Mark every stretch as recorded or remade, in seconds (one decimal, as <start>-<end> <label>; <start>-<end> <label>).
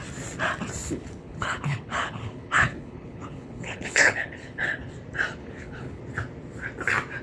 0.0-0.8 recorded; 0.8-4.9 remade; 4.9-5.4 recorded; 5.4-6.0 remade; 6.0-7.2 recorded